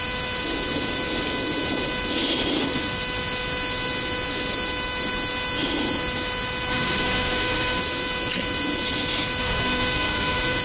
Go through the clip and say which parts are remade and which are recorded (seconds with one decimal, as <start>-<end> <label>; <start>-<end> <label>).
0.0-6.7 recorded; 6.7-7.8 remade; 7.8-9.4 recorded; 9.4-10.6 remade

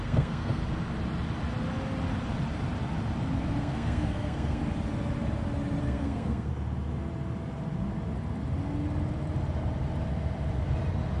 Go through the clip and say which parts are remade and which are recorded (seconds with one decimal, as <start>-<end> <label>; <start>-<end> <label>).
0.0-0.6 remade; 0.6-3.6 recorded; 3.6-4.6 remade; 4.6-5.8 recorded; 5.8-6.5 remade; 6.5-11.2 recorded

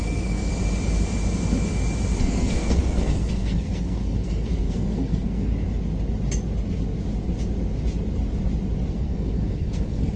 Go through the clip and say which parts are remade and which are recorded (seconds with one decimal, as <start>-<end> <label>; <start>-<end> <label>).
0.0-0.5 remade; 0.5-2.2 recorded; 2.2-5.5 remade; 5.5-8.9 recorded; 8.9-10.2 remade

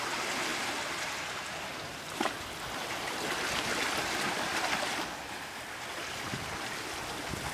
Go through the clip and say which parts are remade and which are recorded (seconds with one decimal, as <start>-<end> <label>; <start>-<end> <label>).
0.0-7.5 recorded

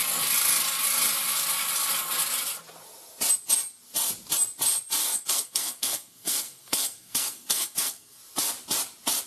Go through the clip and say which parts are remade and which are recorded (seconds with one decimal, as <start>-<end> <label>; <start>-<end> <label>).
0.0-5.0 recorded; 5.0-8.2 remade; 8.2-9.3 recorded